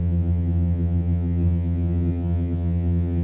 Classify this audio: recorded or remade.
remade